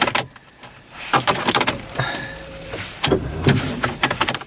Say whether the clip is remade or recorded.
remade